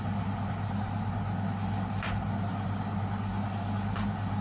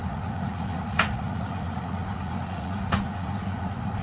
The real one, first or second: first